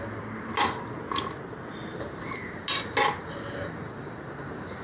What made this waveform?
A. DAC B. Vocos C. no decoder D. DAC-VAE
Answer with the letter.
C